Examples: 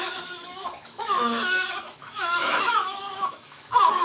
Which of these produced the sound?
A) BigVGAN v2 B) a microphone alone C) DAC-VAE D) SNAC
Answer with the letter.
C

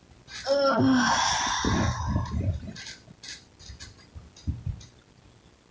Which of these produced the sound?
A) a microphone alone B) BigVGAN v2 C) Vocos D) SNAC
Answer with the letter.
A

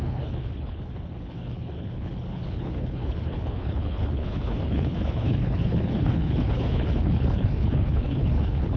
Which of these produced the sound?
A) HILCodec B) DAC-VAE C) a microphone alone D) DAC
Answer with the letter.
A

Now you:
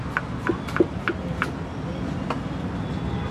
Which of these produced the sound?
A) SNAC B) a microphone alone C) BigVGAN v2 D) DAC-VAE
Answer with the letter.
B